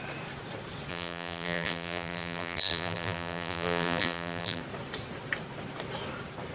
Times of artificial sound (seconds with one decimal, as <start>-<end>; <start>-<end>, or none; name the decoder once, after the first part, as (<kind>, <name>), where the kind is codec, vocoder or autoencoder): 0.9-4.6 (vocoder, BigVGAN v2)